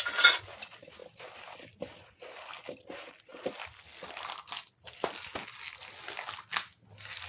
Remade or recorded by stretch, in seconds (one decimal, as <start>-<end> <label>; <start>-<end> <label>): 0.0-7.3 recorded